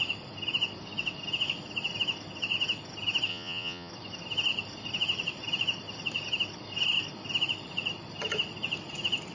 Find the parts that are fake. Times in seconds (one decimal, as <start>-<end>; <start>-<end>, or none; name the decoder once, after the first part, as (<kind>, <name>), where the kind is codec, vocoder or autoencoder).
3.3-3.9 (vocoder, Vocos)

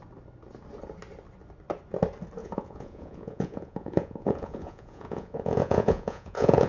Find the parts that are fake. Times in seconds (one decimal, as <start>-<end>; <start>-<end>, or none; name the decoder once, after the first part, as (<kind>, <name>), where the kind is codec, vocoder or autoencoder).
2.4-6.7 (vocoder, Vocos)

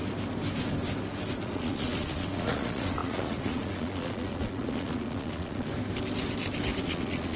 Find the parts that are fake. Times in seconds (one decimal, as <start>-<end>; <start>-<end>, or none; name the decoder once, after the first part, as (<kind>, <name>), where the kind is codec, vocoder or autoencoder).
1.4-5.7 (vocoder, Vocos); 6.8-7.4

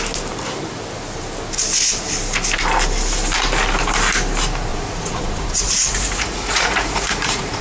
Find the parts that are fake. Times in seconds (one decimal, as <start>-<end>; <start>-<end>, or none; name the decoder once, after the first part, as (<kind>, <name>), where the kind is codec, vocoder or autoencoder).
4.7-7.6 (vocoder, Vocos)

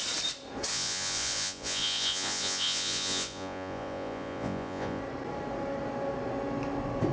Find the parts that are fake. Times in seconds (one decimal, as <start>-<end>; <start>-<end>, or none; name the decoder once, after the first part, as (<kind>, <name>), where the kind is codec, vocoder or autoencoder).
0.7-5.0 (vocoder, Vocos)

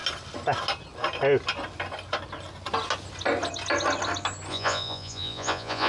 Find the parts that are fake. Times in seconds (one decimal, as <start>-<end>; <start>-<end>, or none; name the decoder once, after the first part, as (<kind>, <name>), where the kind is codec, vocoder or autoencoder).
4.5-5.9 (vocoder, Vocos)